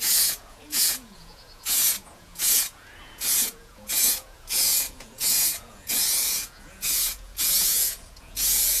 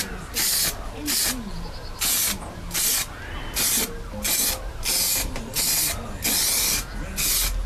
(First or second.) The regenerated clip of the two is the first